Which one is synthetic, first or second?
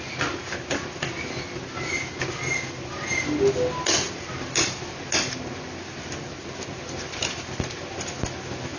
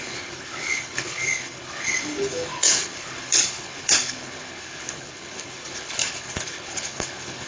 second